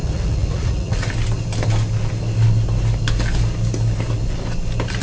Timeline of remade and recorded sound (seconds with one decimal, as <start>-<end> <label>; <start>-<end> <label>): 0.0-1.1 remade; 1.1-5.0 recorded